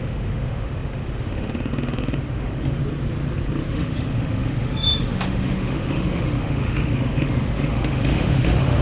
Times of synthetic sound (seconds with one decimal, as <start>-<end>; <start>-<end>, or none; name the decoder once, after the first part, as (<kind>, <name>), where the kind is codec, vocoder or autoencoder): 0.0-2.8 (autoencoder, DAC-VAE); 3.7-8.8